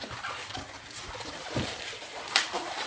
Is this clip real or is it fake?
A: fake